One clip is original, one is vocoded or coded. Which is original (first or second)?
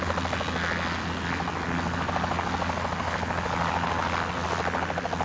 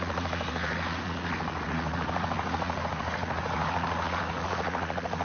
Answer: first